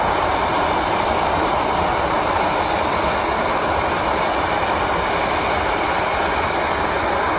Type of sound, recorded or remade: recorded